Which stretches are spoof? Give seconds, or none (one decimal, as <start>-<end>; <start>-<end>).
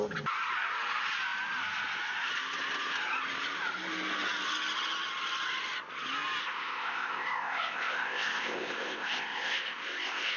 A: 6.4-10.4